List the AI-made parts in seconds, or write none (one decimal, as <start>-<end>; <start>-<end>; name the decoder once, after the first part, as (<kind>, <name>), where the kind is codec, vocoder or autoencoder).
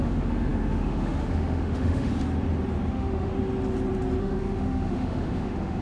0.0-2.1 (autoencoder, DAC-VAE); 2.9-3.3; 4.2-5.8